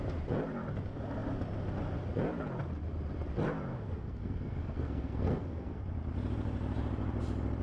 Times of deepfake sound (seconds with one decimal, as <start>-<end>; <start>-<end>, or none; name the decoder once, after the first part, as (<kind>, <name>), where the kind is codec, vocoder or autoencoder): 3.7-5.8 (codec, SNAC)